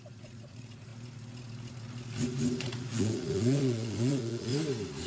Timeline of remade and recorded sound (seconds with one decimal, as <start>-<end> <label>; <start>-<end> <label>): 0.0-0.9 remade; 0.9-2.6 recorded; 2.6-4.5 remade; 4.5-5.1 recorded